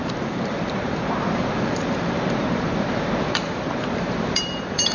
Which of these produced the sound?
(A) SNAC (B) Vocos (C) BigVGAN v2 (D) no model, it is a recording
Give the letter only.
C